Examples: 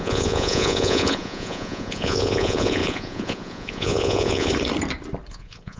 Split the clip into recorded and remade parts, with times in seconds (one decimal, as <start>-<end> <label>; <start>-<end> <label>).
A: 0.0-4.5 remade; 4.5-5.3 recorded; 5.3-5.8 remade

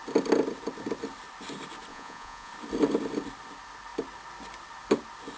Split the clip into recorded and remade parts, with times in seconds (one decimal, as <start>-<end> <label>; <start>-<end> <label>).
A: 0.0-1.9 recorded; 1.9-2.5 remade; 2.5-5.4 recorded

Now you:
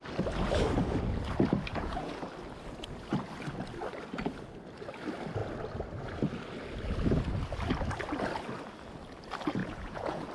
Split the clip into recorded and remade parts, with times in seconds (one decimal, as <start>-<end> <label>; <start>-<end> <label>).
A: 0.0-1.7 recorded; 1.7-2.2 remade; 2.2-9.6 recorded; 9.6-10.3 remade

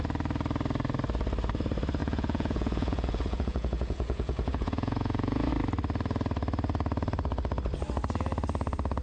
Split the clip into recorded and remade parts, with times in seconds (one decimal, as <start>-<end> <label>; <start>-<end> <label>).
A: 0.0-2.0 recorded; 2.0-5.5 remade; 5.5-9.0 recorded

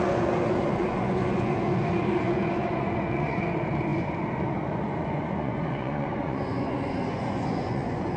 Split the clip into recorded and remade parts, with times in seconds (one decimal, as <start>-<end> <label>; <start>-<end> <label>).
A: 0.0-8.2 remade

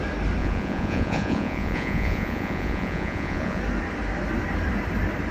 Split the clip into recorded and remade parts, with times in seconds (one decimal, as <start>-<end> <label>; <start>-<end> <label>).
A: 0.0-0.4 recorded; 0.4-3.6 remade; 3.6-5.3 recorded